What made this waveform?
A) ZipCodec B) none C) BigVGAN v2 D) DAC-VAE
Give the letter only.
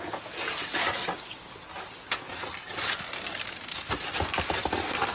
B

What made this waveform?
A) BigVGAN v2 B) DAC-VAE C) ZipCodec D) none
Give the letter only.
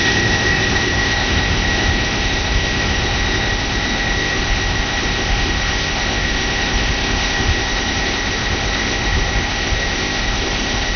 C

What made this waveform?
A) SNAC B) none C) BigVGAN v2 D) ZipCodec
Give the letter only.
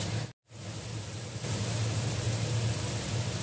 B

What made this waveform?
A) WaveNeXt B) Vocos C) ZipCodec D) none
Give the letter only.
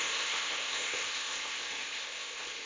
C